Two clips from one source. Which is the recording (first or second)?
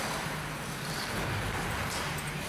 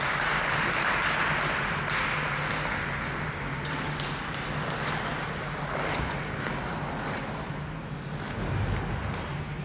second